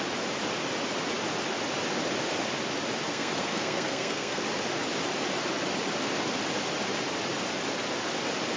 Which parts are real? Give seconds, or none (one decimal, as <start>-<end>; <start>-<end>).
0.0-3.1; 4.4-8.6